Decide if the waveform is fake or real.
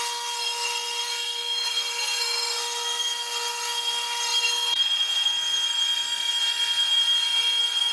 fake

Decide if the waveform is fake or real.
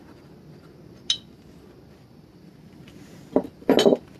real